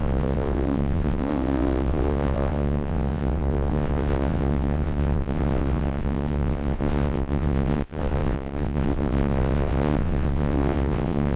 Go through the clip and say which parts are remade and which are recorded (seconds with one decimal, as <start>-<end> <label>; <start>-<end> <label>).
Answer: 0.0-11.4 remade